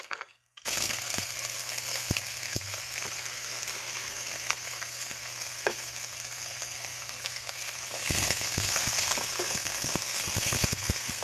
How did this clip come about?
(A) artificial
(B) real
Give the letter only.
A